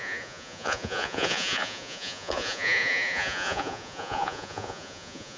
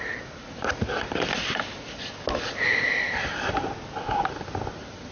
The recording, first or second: second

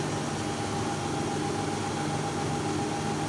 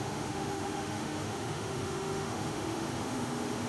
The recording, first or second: first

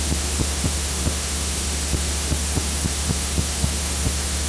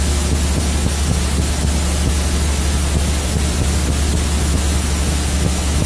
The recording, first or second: second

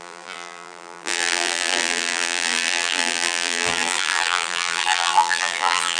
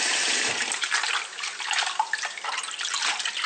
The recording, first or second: second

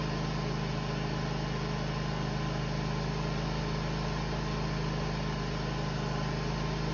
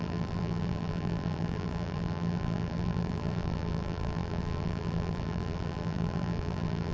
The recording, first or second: first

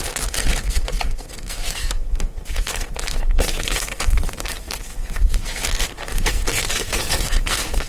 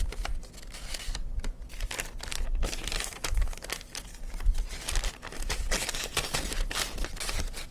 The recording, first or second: second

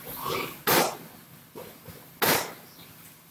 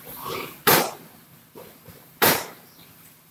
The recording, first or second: first